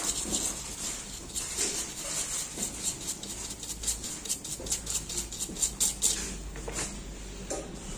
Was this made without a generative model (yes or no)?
yes